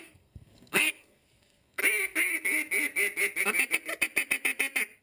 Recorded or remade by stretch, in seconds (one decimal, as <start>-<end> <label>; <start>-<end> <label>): 0.0-1.8 remade; 1.8-5.0 recorded